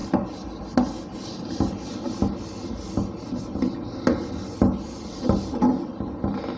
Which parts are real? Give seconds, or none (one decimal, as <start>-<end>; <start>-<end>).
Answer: 0.0-6.6